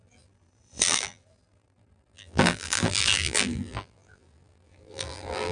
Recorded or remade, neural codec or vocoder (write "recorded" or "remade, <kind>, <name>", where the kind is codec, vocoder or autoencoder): remade, vocoder, BigVGAN v2